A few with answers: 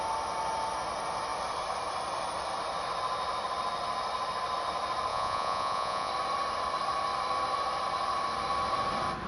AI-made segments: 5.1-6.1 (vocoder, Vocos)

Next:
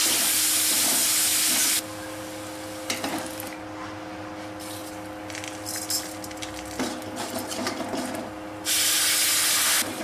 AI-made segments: none

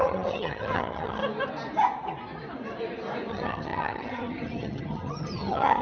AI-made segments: 0.0-1.2 (vocoder, HiFi-GAN); 3.3-5.8

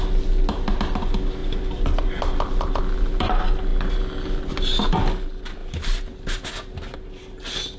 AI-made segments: none